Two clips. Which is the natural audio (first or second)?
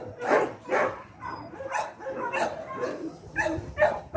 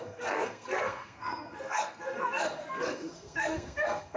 first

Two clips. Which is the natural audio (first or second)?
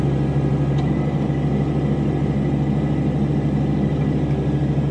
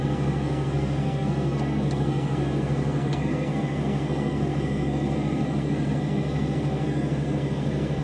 first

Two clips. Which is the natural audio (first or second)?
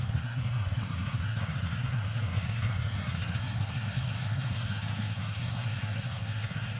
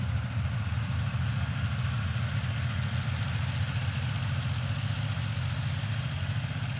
second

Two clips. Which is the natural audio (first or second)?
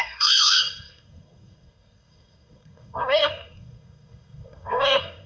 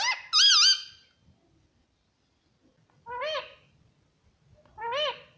second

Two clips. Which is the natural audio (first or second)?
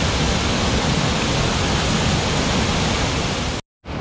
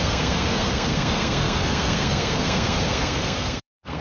first